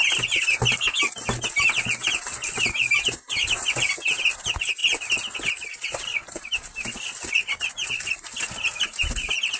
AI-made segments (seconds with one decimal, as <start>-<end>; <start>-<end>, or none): none